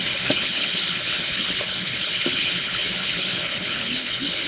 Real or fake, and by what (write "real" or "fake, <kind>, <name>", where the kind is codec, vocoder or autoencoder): fake, codec, HILCodec